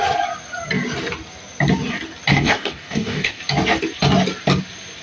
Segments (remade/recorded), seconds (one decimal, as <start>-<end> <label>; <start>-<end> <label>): 0.0-2.3 recorded; 2.3-3.4 remade; 3.4-5.0 recorded